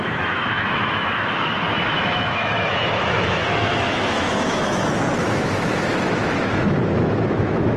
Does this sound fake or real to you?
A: fake